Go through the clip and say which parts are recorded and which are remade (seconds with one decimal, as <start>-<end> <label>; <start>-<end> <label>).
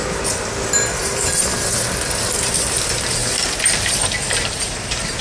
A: 0.0-1.0 recorded; 1.0-3.2 remade; 3.2-3.8 recorded; 3.8-5.2 remade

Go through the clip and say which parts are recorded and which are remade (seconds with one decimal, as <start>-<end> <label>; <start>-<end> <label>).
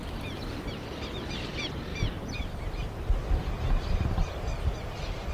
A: 0.0-1.9 recorded; 1.9-2.9 remade; 2.9-5.3 recorded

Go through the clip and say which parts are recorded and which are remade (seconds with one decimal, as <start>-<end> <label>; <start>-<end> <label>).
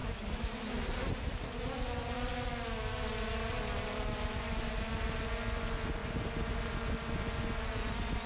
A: 0.0-3.4 recorded; 3.4-4.4 remade; 4.4-6.0 recorded; 6.0-6.7 remade; 6.7-8.3 recorded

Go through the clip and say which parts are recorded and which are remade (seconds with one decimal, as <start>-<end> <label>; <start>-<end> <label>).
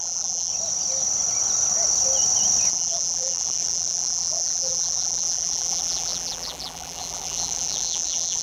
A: 0.0-0.5 remade; 0.5-2.7 recorded; 2.7-8.4 remade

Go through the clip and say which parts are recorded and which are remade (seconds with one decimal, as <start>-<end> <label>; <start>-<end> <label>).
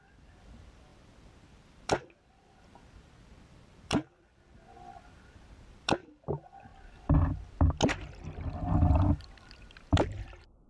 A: 0.0-6.7 remade; 6.7-8.9 recorded; 8.9-10.7 remade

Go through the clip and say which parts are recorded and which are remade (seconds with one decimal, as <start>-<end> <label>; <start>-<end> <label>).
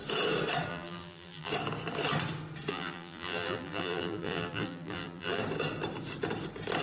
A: 0.0-0.7 recorded; 0.7-1.5 remade; 1.5-2.7 recorded; 2.7-5.4 remade; 5.4-6.8 recorded